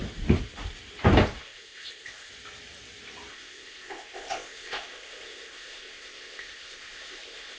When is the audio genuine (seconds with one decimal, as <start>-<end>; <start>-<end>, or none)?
0.0-1.4; 2.3-3.3